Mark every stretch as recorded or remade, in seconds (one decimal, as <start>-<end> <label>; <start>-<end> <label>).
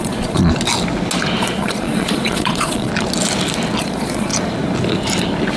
0.0-0.4 remade; 0.4-1.4 recorded; 1.4-2.9 remade; 2.9-3.8 recorded; 3.8-4.3 remade; 4.3-5.6 recorded